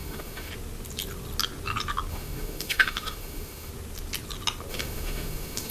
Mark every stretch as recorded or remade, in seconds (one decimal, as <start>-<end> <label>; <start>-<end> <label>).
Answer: 0.0-0.5 remade; 0.5-2.1 recorded; 2.1-3.7 remade; 3.7-4.7 recorded; 4.7-5.7 remade